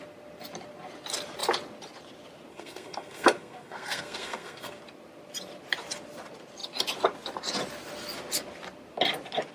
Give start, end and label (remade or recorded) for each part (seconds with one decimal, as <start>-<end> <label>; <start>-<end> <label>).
0.0-2.5 recorded; 2.5-4.8 remade; 4.8-9.5 recorded